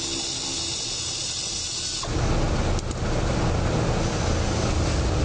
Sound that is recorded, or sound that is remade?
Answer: recorded